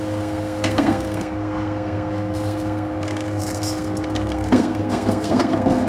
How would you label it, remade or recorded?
remade